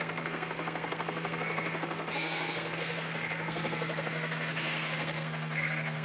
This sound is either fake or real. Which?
fake